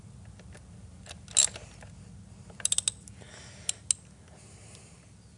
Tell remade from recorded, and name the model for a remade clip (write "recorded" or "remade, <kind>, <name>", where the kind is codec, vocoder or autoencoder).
recorded